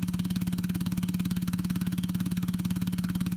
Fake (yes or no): yes